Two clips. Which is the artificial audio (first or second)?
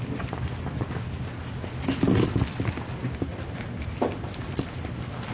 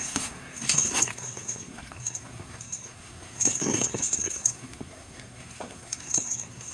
second